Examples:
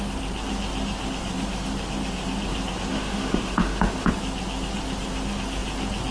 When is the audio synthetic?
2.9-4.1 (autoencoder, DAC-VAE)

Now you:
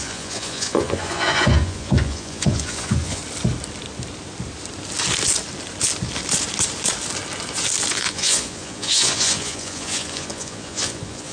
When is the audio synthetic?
0.0-3.2 (vocoder, Vocos); 7.9-11.3